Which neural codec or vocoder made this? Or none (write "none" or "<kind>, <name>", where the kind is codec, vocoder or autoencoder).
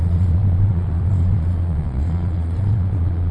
vocoder, Vocos